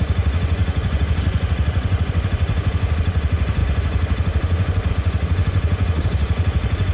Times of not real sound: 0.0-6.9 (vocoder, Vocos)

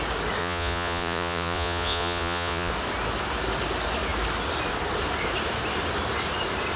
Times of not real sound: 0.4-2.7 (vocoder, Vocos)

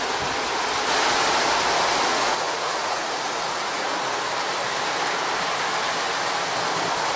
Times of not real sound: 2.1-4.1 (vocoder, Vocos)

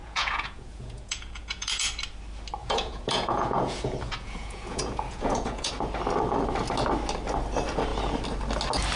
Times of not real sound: 0.0-1.9 (vocoder, Vocos); 2.6-5.7

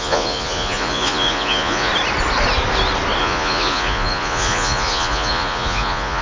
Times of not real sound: 0.0-1.9 (vocoder, Vocos); 3.2-6.2